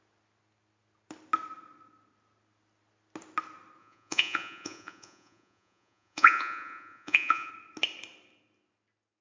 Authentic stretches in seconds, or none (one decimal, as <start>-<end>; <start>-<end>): 0.0-3.8; 7.5-9.2